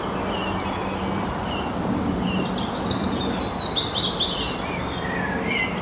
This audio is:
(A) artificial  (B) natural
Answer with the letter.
B